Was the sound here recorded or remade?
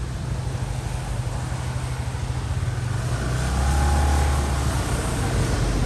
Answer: recorded